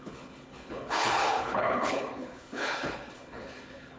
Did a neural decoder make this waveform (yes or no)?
yes